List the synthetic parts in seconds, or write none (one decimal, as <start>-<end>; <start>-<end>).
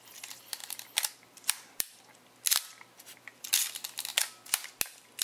0.0-4.1